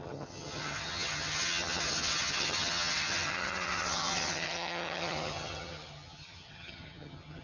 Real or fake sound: fake